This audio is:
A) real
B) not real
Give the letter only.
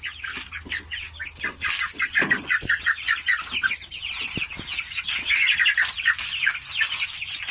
A